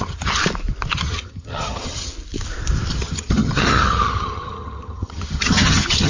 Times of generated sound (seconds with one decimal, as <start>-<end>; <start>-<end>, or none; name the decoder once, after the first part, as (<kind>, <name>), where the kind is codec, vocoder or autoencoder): 0.0-0.4 (vocoder, HiFi-GAN); 0.9-2.1; 2.9-6.1